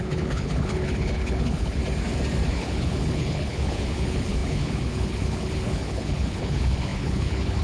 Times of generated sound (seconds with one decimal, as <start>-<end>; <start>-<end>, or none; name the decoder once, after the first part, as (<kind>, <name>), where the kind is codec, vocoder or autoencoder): 0.0-1.8 (codec, HILCodec); 2.5-7.6